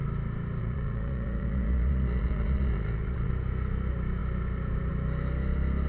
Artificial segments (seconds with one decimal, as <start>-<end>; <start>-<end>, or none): 0.6-3.3